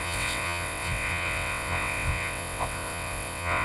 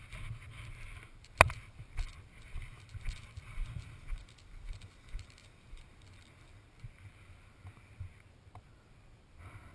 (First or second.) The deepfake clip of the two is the first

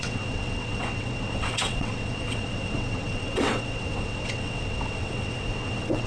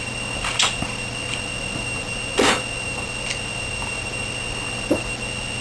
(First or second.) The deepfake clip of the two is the first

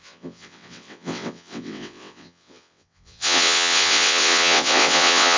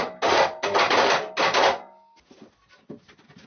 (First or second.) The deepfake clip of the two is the first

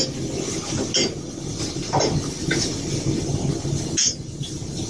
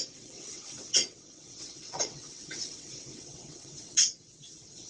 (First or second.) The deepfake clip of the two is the second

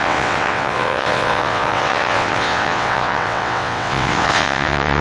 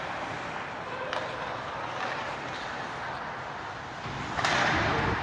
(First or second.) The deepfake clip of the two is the first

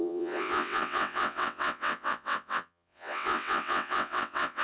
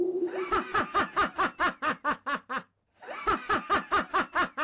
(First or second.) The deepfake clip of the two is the first